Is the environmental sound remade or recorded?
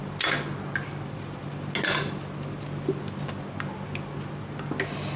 recorded